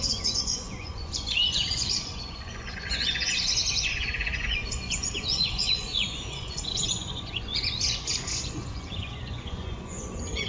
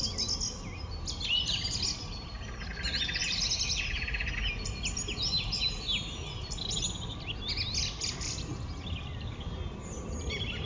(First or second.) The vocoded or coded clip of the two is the first